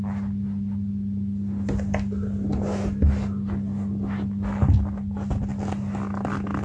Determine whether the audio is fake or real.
real